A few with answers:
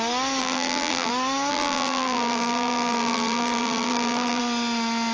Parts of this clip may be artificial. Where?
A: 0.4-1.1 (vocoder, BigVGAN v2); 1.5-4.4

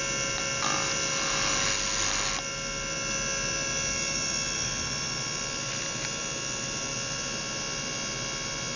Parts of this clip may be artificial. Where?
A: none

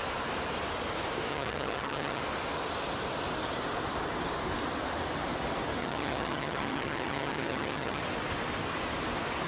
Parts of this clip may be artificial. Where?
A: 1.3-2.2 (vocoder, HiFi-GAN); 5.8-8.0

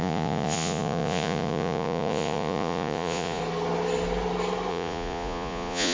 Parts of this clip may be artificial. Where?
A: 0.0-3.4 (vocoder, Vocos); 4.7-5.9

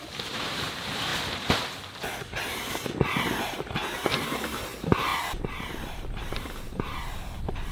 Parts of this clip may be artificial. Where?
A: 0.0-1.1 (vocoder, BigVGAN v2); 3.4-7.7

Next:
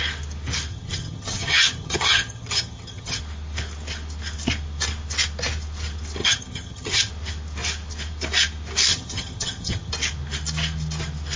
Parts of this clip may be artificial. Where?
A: 0.7-3.2 (vocoder, HiFi-GAN); 6.2-7.1; 8.9-9.9

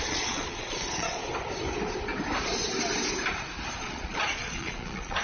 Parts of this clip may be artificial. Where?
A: 0.0-1.2 (vocoder, Vocos); 3.7-5.2